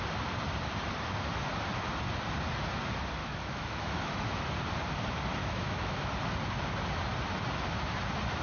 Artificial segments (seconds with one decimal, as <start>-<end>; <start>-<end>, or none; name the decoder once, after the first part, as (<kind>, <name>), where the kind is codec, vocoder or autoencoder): 3.2-4.4 (autoencoder, DAC-VAE); 5.4-6.1